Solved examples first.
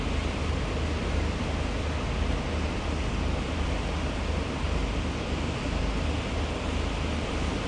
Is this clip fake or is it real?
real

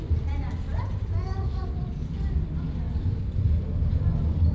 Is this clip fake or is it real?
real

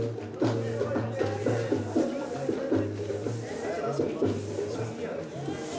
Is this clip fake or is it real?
real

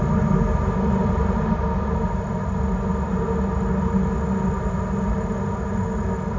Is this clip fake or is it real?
real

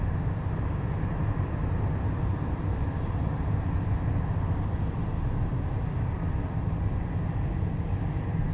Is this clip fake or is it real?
real